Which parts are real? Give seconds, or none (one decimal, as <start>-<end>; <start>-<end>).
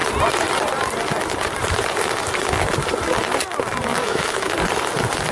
0.0-3.9; 4.5-5.3